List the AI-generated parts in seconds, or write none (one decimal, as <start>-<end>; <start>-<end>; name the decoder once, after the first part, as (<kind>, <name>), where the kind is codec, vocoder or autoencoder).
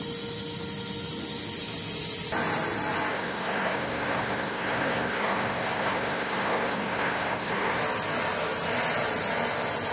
3.1-7.8 (codec, SNAC)